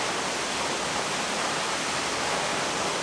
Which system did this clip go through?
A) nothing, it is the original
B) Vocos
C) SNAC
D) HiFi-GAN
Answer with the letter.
A